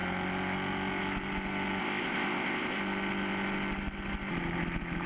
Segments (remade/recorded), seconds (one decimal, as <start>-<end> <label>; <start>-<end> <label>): 0.0-1.8 recorded; 1.8-2.8 remade; 2.8-5.1 recorded